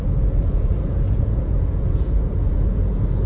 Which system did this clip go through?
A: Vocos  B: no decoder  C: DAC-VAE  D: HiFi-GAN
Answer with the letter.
A